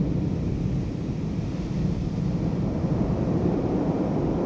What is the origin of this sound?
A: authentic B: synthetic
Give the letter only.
A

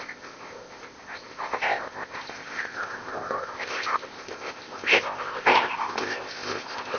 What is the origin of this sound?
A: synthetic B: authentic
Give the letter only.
A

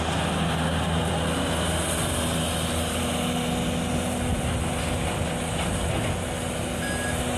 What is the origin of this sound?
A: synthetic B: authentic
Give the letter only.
B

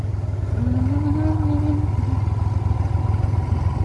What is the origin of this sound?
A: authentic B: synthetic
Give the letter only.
A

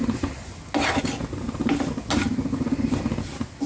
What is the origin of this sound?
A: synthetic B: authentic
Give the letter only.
B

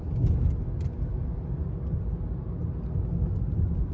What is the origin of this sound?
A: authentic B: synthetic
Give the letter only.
A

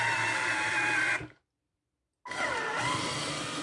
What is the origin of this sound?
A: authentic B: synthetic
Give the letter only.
A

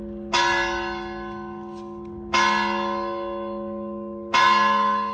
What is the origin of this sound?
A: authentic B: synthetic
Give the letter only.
A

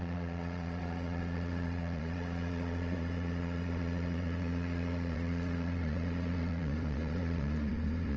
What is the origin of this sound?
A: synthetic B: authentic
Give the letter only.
A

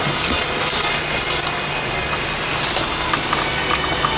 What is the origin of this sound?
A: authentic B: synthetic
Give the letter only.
A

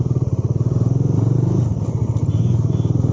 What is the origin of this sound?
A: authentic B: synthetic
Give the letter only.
A